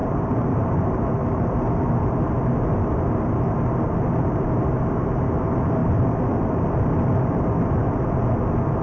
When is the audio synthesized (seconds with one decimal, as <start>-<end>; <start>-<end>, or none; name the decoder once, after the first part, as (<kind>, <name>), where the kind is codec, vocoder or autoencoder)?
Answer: 0.0-0.7 (vocoder, BigVGAN v2)

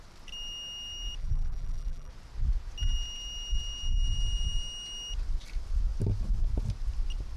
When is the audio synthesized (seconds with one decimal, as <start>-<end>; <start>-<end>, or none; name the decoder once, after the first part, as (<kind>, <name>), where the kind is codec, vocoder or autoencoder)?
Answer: 1.2-2.1 (vocoder, BigVGAN v2)

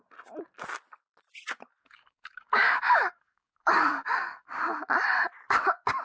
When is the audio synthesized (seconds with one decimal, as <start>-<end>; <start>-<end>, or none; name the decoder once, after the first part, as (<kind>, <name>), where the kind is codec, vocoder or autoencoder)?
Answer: 1.8-4.6 (codec, DAC)

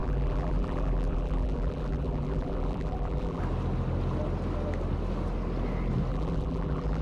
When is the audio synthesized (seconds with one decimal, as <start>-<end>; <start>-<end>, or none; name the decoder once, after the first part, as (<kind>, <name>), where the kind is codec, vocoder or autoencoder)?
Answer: 0.0-3.4 (vocoder, BigVGAN v2); 6.1-7.0